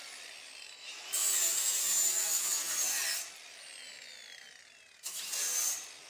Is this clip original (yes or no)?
yes